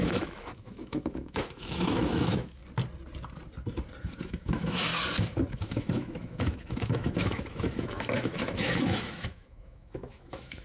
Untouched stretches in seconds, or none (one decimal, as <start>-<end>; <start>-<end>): 2.6-4.2; 4.9-5.5